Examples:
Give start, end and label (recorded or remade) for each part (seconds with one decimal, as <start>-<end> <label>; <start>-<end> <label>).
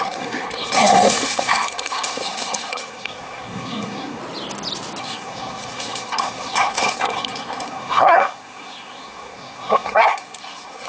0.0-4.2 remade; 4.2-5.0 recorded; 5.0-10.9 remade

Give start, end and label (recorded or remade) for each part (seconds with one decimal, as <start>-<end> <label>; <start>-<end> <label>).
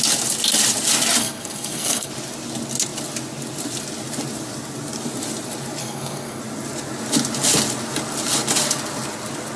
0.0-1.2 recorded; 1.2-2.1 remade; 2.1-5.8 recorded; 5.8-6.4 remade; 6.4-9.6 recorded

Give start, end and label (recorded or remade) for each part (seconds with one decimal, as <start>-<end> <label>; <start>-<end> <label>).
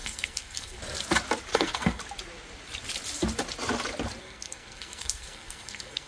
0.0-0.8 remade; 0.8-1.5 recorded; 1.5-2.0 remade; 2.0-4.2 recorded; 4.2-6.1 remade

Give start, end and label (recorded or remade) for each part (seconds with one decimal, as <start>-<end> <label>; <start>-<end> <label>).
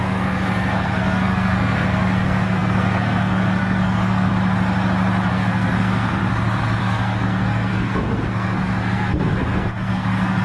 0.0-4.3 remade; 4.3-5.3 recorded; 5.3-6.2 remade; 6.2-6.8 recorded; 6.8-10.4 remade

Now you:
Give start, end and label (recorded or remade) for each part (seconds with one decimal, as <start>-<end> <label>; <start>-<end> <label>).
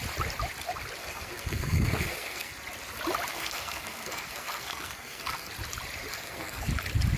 0.0-1.0 recorded; 1.0-2.5 remade; 2.5-3.3 recorded; 3.3-5.5 remade; 5.5-6.1 recorded; 6.1-6.7 remade; 6.7-7.2 recorded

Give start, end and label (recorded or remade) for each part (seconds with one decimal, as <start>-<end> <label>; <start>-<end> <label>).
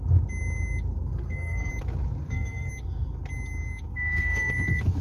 0.0-1.0 recorded; 1.0-1.7 remade; 1.7-2.2 recorded; 2.2-2.7 remade; 2.7-3.9 recorded; 3.9-4.5 remade; 4.5-5.0 recorded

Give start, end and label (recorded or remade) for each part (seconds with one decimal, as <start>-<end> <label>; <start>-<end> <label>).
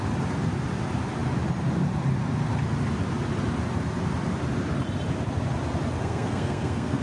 0.0-6.0 recorded; 6.0-7.0 remade